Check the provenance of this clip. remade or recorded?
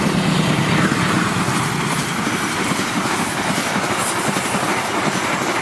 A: recorded